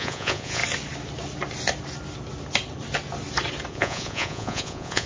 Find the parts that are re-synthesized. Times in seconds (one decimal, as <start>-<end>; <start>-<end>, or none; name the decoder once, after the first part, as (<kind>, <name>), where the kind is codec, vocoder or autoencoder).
0.0-0.6 (vocoder, Vocos); 3.7-5.1